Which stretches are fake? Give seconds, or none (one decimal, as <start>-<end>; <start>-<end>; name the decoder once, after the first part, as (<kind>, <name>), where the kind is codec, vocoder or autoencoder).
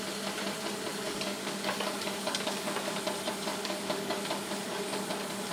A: 0.9-3.0 (codec, DAC); 3.5-5.1